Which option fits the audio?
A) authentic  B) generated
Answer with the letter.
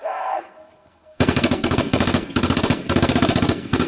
B